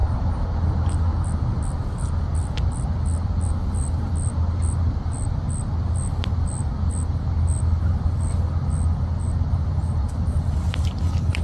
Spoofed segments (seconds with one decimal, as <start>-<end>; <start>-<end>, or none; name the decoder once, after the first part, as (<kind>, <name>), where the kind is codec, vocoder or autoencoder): none